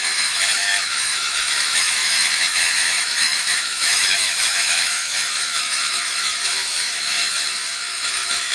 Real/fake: fake